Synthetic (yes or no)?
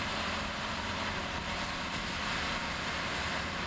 no